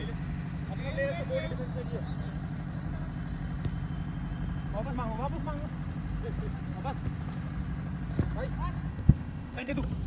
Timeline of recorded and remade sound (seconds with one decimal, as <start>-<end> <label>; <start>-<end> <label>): 0.0-8.9 recorded; 8.9-9.7 remade; 9.7-10.1 recorded